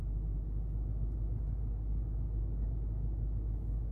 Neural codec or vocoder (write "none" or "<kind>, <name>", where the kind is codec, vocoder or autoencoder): none